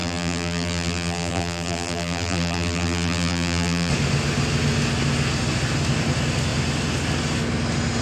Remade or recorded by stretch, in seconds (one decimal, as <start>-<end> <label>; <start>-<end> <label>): 0.0-3.9 remade; 3.9-8.0 recorded